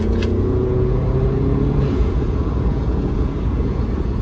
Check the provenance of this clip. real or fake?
fake